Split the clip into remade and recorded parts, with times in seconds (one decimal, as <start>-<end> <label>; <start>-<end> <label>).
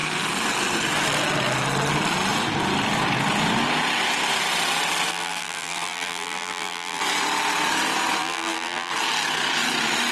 0.0-5.1 recorded; 5.1-7.0 remade; 7.0-8.2 recorded; 8.2-8.9 remade; 8.9-10.1 recorded